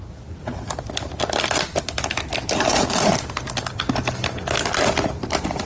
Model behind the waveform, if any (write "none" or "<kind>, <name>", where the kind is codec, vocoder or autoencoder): none